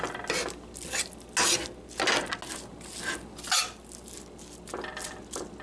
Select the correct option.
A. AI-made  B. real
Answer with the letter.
B